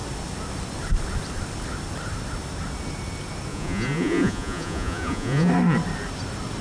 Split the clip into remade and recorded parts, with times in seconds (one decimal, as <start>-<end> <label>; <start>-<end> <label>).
0.0-3.5 recorded; 3.5-5.5 remade; 5.5-6.6 recorded